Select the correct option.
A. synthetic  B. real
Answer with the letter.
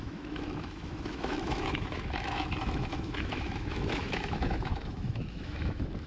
A